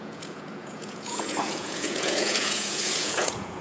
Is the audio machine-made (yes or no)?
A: yes